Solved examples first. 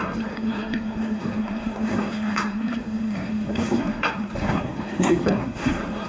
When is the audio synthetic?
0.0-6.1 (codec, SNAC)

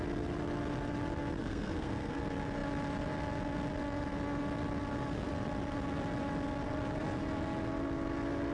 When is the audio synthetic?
1.4-2.2 (codec, SNAC)

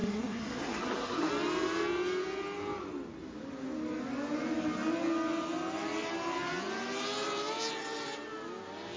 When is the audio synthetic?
0.0-1.3 (codec, SNAC)

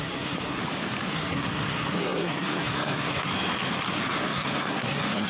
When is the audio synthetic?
0.0-0.6 (codec, SNAC); 1.1-3.3; 3.9-5.3

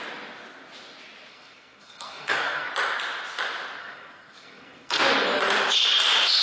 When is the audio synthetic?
1.3-2.7 (codec, SNAC); 3.8-5.0